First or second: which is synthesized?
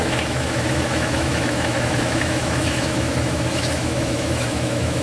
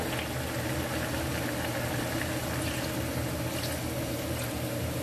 first